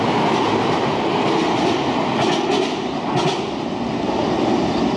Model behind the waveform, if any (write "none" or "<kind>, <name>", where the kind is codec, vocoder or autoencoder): none